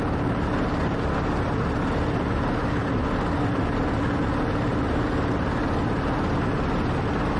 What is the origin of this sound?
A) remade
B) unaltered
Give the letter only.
B